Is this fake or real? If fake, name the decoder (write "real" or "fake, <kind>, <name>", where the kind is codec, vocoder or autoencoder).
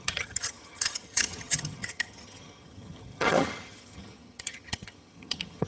fake, vocoder, HiFi-GAN